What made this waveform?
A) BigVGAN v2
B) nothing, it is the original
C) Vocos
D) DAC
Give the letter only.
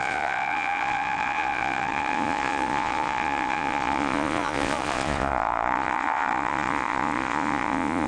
C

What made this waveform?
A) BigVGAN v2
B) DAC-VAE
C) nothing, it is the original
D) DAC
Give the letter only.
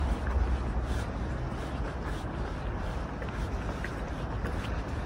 C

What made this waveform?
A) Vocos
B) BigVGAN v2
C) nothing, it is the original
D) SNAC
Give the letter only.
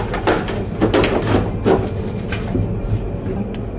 C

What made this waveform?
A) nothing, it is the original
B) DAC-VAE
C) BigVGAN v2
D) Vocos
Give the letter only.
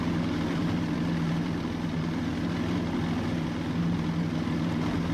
A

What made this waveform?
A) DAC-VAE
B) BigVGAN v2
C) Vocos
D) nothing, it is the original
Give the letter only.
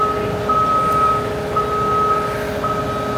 D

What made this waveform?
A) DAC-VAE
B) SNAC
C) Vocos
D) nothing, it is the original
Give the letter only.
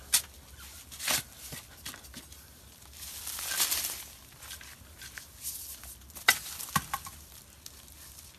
D